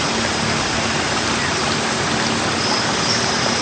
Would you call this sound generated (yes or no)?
no